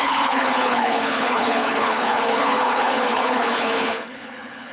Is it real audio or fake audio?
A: fake